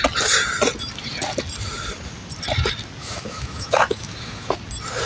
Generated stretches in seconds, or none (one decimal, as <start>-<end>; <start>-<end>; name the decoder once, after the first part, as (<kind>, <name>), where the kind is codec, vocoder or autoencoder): 3.0-4.5 (autoencoder, DAC-VAE)